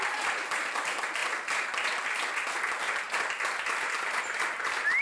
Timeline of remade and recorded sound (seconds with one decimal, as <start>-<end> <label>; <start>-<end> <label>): 0.0-5.0 recorded